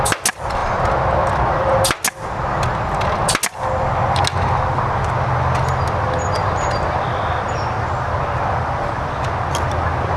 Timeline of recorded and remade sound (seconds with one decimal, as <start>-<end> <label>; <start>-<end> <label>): 0.0-10.2 recorded